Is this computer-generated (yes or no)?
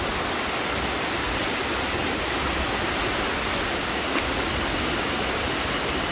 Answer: no